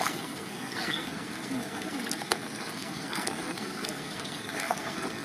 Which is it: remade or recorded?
remade